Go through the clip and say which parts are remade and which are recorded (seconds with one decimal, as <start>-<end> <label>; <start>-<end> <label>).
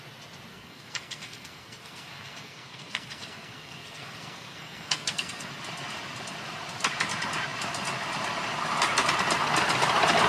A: 0.0-0.5 recorded; 0.5-5.5 remade; 5.5-10.3 recorded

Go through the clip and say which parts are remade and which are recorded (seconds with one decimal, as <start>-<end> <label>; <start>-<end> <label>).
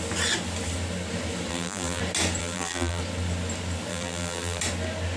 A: 0.0-1.5 recorded; 1.5-2.0 remade; 2.0-2.4 recorded; 2.4-3.0 remade; 3.0-3.9 recorded; 3.9-4.6 remade; 4.6-5.2 recorded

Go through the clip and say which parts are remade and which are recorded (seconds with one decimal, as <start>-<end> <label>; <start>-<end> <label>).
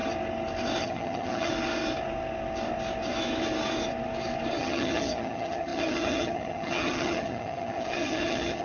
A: 0.0-0.8 recorded; 0.8-1.5 remade; 1.5-4.6 recorded; 4.6-8.6 remade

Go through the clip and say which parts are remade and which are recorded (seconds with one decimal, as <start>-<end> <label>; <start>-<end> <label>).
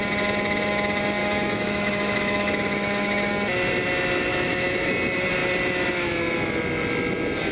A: 0.0-1.2 recorded; 1.2-3.3 remade; 3.3-4.3 recorded; 4.3-4.9 remade; 4.9-7.5 recorded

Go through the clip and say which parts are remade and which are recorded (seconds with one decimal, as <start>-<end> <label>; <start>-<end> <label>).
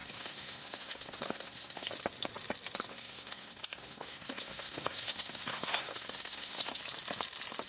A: 0.0-1.9 remade; 1.9-2.9 recorded; 2.9-6.8 remade; 6.8-7.7 recorded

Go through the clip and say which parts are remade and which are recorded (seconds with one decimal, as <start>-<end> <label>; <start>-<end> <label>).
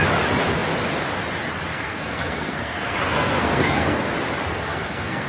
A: 0.0-1.7 recorded; 1.7-4.1 remade; 4.1-4.5 recorded; 4.5-5.3 remade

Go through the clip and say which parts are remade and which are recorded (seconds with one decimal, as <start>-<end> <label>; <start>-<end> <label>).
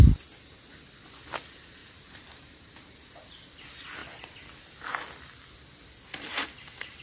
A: 0.0-1.8 recorded; 1.8-3.1 remade; 3.1-7.0 recorded